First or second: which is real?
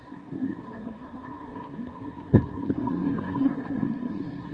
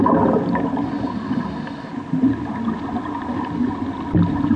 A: second